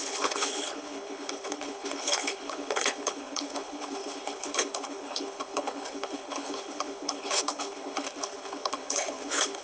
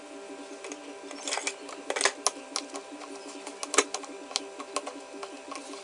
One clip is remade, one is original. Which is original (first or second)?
second